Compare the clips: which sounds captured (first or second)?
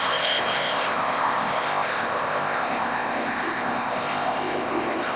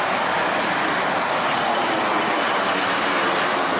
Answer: second